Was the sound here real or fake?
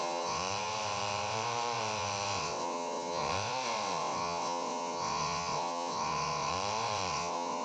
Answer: fake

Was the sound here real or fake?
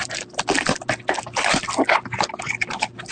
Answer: real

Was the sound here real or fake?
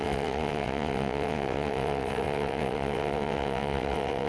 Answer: fake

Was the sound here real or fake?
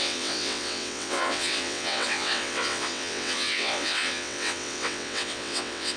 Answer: fake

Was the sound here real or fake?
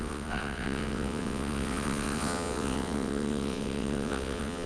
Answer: fake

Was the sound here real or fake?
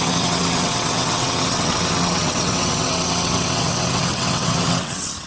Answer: fake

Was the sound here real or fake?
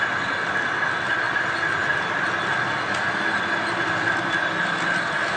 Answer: real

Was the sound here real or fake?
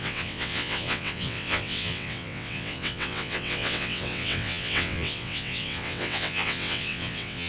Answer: fake